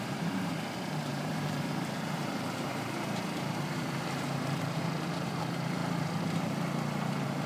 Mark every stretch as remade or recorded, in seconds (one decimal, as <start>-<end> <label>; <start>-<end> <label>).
0.0-5.8 remade; 5.8-7.1 recorded; 7.1-7.5 remade